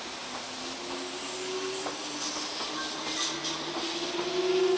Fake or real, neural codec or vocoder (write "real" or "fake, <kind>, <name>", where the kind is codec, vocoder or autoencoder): real